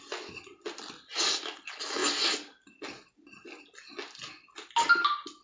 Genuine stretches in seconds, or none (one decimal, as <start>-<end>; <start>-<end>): 0.0-5.4